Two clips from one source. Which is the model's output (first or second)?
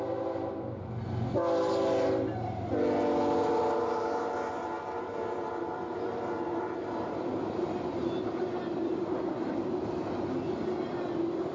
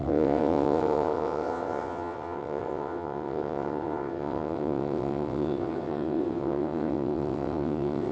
second